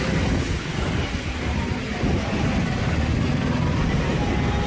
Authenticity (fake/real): real